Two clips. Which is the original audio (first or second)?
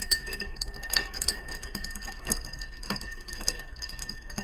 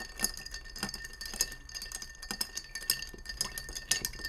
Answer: second